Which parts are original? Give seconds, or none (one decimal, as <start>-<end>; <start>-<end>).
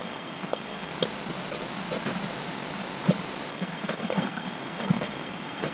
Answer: 0.9-3.5